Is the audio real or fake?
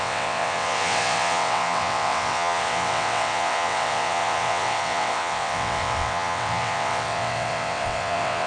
fake